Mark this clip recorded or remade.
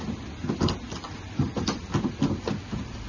recorded